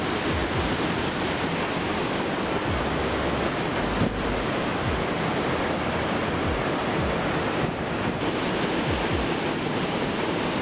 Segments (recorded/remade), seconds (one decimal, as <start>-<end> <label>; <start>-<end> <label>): 0.0-5.3 recorded; 5.3-8.1 remade; 8.1-10.6 recorded